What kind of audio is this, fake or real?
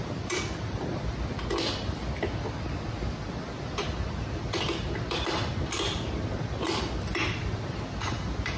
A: real